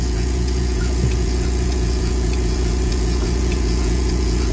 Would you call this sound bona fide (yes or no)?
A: no